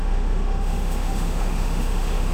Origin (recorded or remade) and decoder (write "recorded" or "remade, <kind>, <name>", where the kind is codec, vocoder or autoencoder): remade, autoencoder, DAC-VAE